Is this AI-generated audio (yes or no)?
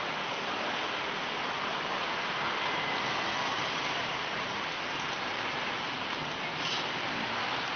yes